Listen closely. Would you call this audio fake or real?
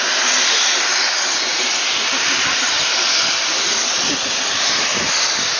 real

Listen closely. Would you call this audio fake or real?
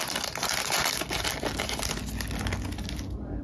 real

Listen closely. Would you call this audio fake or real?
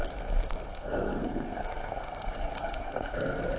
fake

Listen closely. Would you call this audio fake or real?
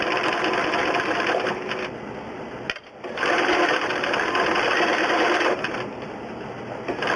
real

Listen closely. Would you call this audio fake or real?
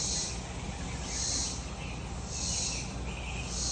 real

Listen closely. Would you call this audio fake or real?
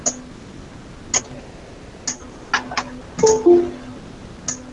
real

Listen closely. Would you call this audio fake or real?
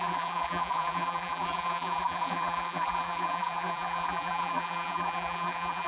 fake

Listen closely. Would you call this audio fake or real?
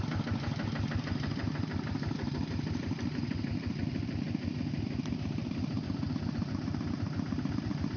fake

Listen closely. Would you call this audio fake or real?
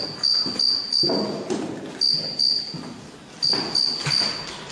real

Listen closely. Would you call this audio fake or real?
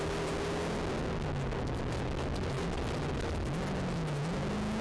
real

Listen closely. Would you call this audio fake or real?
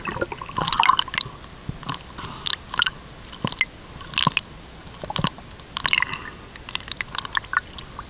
real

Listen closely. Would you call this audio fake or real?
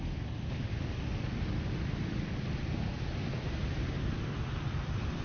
real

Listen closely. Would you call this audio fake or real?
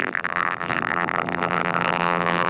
fake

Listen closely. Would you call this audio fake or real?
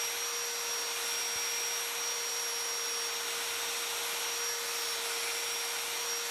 real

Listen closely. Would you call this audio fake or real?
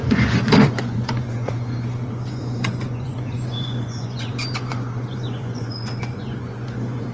fake